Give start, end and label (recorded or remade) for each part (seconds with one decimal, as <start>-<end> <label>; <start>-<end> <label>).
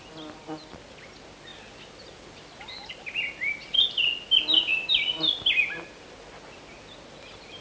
0.0-7.6 recorded